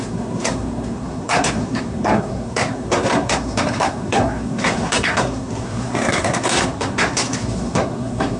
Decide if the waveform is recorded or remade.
remade